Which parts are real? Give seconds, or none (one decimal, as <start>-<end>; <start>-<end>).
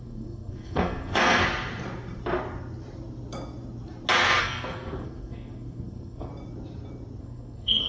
1.4-4.4; 6.3-7.2